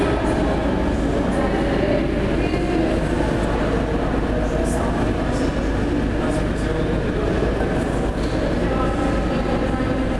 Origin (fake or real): real